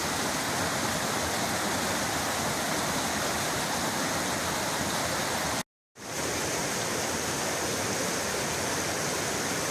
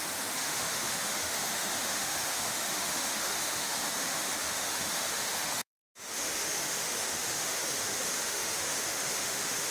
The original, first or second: first